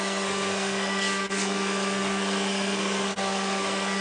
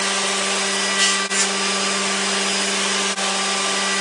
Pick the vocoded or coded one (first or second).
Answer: first